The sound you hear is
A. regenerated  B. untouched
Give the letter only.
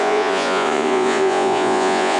A